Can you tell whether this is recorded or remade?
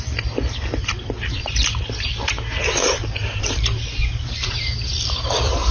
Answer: recorded